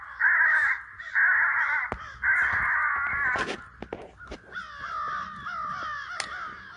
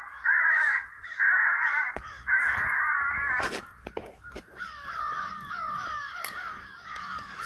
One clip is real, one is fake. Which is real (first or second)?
first